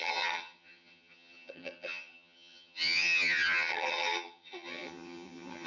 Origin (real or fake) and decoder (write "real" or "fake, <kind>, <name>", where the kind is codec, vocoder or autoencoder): fake, vocoder, HiFi-GAN